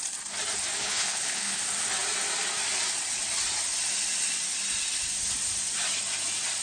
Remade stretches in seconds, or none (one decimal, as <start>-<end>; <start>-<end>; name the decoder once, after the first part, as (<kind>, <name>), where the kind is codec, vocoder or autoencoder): 0.8-1.6 (codec, HILCodec)